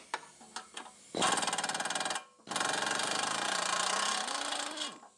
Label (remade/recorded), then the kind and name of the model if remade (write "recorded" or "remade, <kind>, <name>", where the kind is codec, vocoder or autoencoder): recorded